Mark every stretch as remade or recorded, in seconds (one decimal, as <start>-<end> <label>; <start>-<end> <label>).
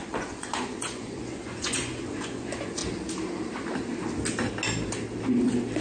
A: 0.0-2.8 remade; 2.8-5.8 recorded